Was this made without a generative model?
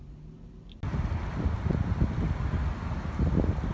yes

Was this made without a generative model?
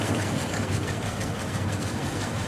no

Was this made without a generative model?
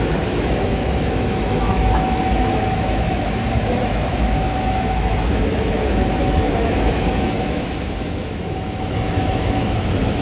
no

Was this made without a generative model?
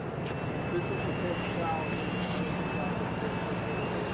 yes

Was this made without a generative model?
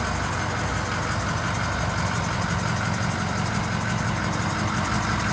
yes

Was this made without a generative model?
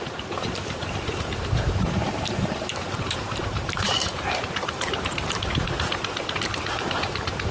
no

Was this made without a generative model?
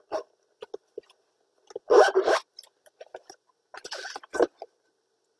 yes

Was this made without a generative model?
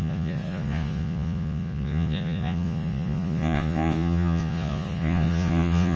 no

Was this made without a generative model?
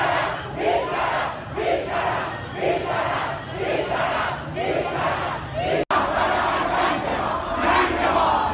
yes